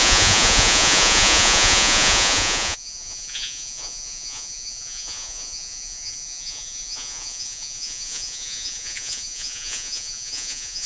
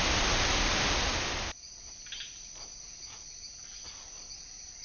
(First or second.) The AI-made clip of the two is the first